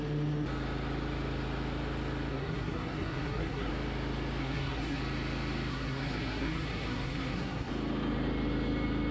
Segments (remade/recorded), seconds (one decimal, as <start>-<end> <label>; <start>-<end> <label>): 0.0-2.3 recorded; 2.3-3.7 remade; 3.7-4.4 recorded; 4.4-5.0 remade; 5.0-5.7 recorded; 5.7-7.7 remade; 7.7-9.1 recorded